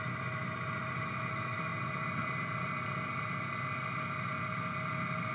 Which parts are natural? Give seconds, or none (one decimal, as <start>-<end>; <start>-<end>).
0.0-5.3